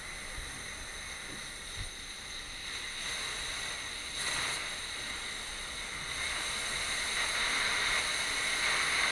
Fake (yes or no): no